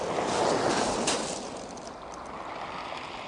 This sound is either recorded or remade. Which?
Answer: remade